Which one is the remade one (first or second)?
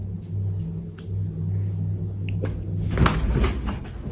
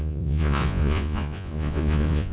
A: second